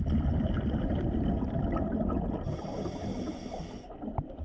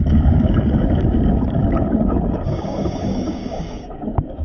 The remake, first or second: second